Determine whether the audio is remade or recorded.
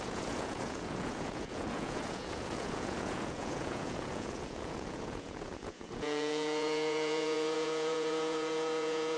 remade